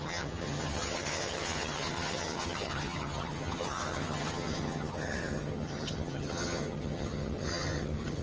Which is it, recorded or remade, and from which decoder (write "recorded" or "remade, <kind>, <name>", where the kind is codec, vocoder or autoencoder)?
remade, vocoder, HiFi-GAN